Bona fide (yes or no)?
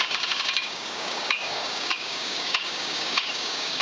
no